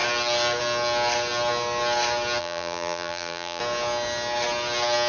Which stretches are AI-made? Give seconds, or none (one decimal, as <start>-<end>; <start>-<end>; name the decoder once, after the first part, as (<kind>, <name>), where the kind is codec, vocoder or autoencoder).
2.4-3.6 (vocoder, BigVGAN v2)